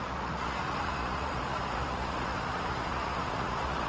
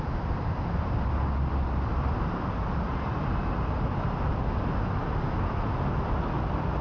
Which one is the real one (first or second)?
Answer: second